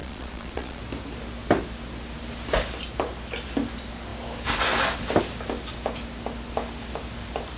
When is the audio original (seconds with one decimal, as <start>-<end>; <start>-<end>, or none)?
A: 0.8-7.6